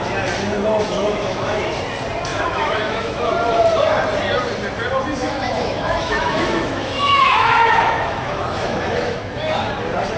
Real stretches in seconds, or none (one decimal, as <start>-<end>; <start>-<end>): 0.0-1.0; 1.6-2.3; 3.3-5.2; 9.7-10.2

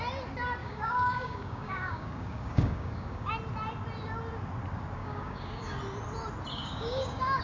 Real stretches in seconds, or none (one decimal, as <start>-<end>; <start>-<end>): 0.0-0.6; 3.3-5.0; 5.8-6.5

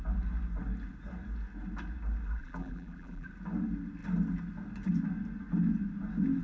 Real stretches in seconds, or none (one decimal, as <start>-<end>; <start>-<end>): 0.0-2.4; 3.3-6.4

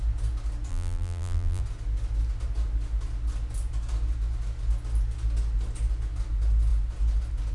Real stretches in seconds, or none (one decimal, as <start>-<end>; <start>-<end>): 0.0-0.7; 1.6-7.5